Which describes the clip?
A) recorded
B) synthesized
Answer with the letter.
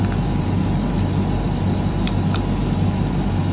A